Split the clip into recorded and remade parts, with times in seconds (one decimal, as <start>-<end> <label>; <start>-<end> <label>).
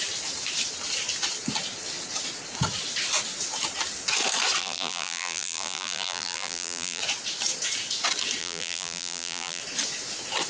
0.0-4.6 recorded; 4.6-7.0 remade; 7.0-8.4 recorded; 8.4-9.6 remade; 9.6-10.5 recorded